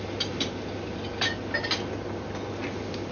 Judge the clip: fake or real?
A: real